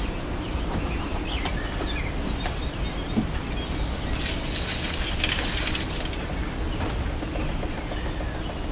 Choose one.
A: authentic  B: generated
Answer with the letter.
A